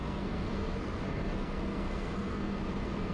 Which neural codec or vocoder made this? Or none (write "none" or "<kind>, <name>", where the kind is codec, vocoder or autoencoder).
codec, SNAC